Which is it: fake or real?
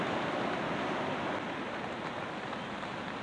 real